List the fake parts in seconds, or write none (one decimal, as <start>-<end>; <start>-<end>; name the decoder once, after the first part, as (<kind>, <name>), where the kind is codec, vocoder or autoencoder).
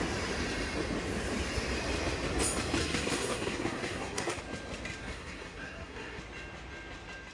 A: 2.8-4.4 (codec, SNAC); 5.0-6.2